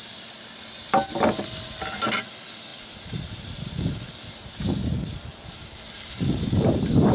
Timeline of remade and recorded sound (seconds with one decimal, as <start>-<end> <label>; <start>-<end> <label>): 0.0-7.1 recorded